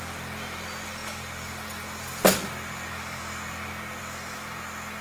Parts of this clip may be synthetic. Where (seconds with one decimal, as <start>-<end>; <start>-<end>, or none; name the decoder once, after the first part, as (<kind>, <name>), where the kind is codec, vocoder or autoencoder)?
none